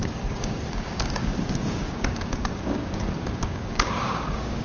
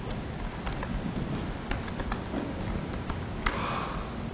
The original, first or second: second